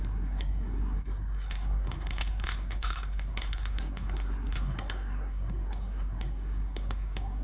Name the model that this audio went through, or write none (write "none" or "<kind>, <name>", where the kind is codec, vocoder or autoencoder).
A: codec, SNAC